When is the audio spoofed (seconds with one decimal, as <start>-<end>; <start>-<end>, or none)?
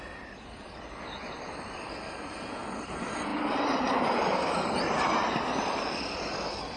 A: 3.3-6.0